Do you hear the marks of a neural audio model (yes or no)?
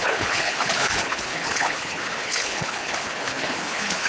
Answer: yes